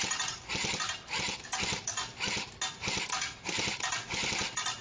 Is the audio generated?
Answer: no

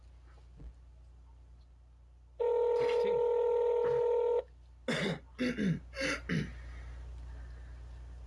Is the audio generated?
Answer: no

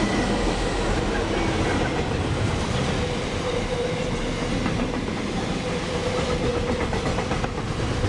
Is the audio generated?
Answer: no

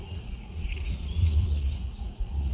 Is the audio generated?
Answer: yes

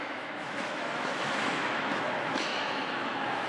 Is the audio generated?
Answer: yes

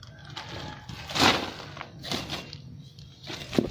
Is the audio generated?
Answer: no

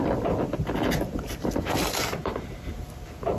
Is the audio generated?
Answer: no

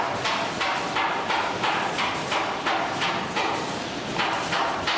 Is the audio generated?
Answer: no